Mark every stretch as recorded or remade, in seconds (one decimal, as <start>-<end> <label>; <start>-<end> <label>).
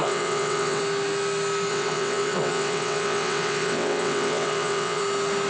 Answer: 0.0-0.8 remade; 0.8-1.7 recorded; 1.7-5.0 remade; 5.0-5.5 recorded